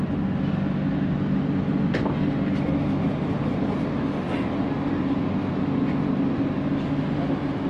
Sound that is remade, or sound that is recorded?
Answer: recorded